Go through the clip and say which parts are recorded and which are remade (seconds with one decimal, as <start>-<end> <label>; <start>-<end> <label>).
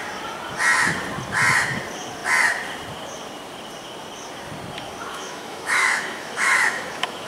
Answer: 0.0-5.1 recorded; 5.1-7.3 remade